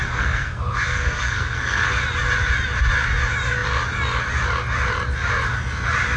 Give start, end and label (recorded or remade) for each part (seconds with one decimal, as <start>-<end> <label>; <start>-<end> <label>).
0.0-1.9 remade; 1.9-6.2 recorded